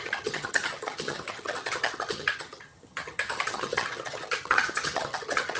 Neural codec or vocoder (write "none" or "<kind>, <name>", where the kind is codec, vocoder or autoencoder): vocoder, HiFi-GAN